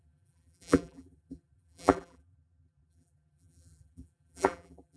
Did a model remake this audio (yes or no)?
yes